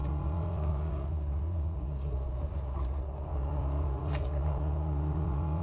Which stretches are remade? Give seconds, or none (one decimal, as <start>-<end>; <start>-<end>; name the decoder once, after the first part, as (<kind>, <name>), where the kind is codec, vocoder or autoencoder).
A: 0.0-5.6 (vocoder, Vocos)